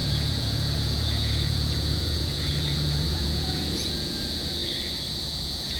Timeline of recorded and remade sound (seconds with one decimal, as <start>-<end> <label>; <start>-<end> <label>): 0.0-4.6 remade; 4.6-5.2 recorded; 5.2-5.8 remade